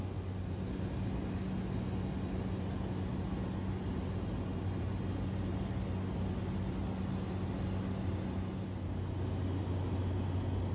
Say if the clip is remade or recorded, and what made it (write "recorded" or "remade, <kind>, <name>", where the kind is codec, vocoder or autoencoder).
recorded